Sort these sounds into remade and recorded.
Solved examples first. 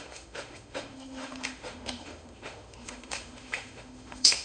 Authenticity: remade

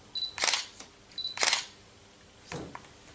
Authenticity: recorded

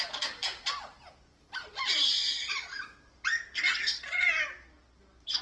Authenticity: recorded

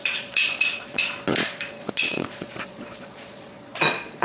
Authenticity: remade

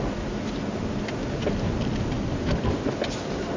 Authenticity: recorded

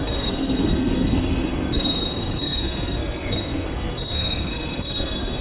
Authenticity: remade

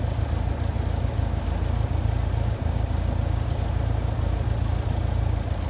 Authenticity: recorded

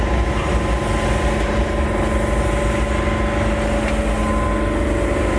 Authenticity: recorded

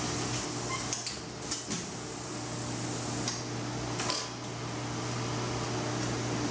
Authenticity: recorded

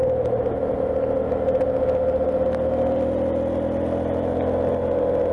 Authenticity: recorded